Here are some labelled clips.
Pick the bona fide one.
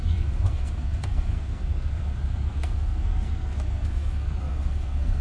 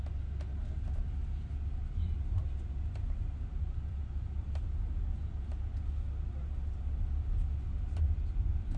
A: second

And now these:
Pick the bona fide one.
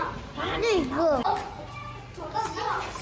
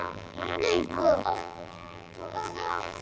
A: first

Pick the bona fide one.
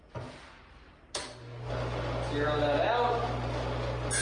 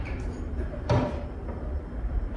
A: first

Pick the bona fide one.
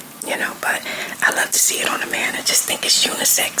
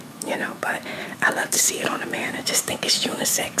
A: first